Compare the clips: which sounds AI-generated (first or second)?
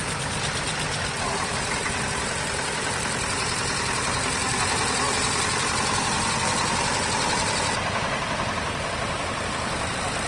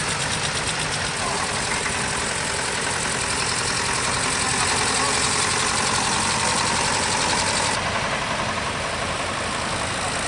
first